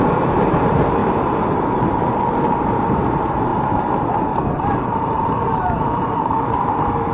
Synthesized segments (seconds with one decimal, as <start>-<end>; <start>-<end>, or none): 0.0-1.0; 1.7-3.5; 4.2-7.1